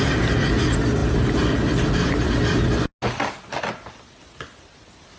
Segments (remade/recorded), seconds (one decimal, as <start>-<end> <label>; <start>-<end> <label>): 0.0-5.2 recorded